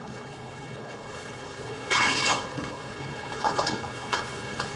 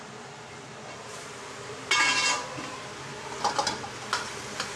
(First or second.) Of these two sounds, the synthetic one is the first